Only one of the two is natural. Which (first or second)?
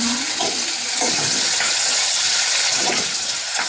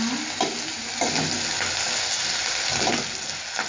second